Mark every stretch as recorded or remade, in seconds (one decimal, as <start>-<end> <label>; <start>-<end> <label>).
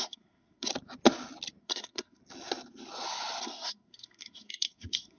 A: 0.0-0.7 remade; 0.7-1.6 recorded; 1.6-2.2 remade; 2.2-3.4 recorded; 3.4-5.2 remade